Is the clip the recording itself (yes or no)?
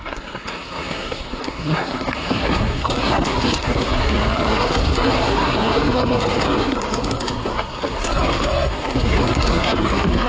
no